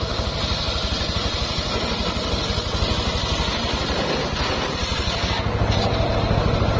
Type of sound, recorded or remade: recorded